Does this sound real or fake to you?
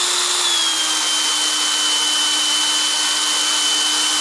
real